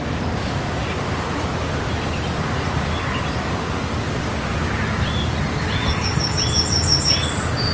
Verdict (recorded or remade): recorded